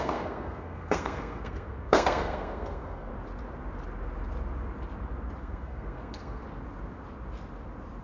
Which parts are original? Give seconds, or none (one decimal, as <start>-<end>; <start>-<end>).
3.1-5.4; 6.4-8.0